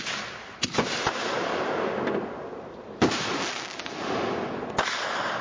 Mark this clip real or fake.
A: real